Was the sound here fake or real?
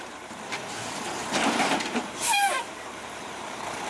fake